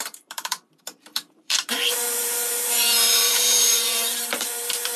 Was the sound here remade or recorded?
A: remade